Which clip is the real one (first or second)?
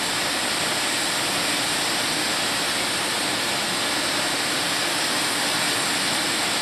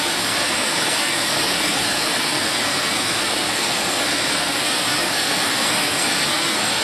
first